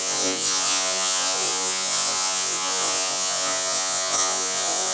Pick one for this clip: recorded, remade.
remade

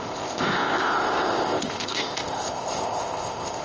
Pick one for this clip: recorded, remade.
remade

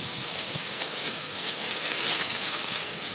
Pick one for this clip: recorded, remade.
remade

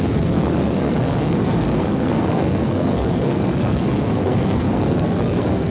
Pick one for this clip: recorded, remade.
remade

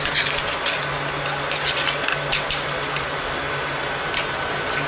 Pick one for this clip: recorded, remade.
recorded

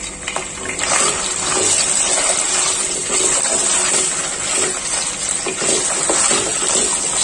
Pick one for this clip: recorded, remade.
recorded